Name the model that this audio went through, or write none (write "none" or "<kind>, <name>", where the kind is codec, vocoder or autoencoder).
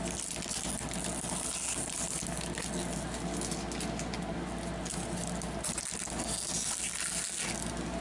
none